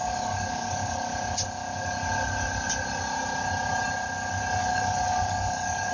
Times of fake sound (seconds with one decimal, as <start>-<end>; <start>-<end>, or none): 0.0-1.1; 4.6-5.9